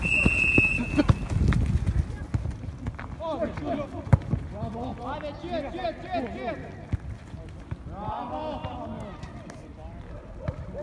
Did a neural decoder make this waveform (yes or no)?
no